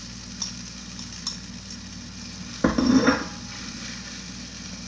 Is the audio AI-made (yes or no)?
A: no